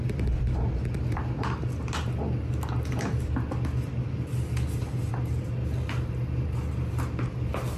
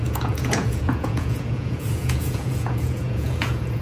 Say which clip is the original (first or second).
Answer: first